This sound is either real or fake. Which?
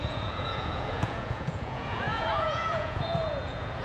fake